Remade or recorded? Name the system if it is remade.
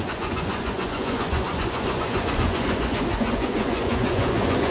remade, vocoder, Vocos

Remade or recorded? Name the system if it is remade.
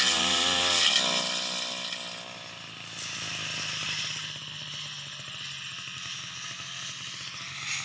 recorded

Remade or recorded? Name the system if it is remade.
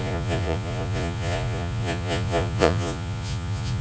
remade, vocoder, Vocos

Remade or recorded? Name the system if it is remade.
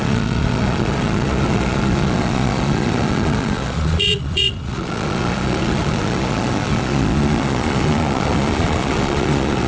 remade, vocoder, Vocos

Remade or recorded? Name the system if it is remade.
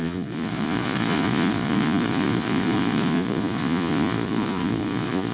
remade, vocoder, Vocos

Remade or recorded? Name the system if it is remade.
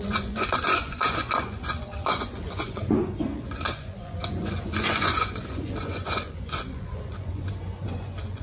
remade, vocoder, Vocos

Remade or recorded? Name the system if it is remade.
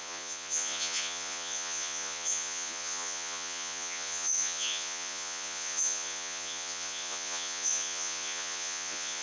remade, vocoder, Vocos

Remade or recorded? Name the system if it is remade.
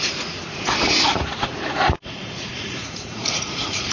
remade, vocoder, Vocos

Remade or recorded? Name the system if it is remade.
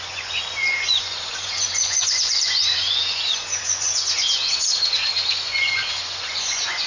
remade, vocoder, Vocos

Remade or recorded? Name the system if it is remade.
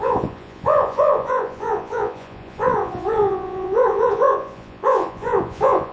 remade, vocoder, Vocos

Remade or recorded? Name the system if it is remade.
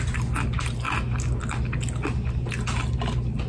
recorded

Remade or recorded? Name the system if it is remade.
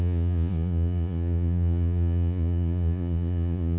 remade, vocoder, Vocos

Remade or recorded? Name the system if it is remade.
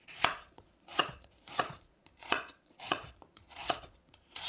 remade, vocoder, Vocos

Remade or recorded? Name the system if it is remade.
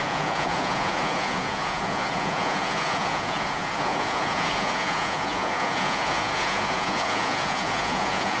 remade, vocoder, Vocos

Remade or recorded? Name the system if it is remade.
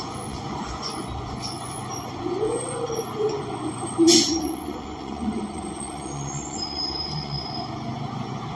remade, vocoder, Vocos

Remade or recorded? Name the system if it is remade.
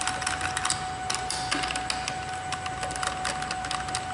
recorded